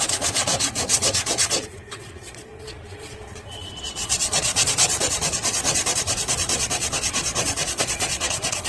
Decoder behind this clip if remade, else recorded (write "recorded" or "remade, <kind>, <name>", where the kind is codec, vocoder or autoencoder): remade, vocoder, Vocos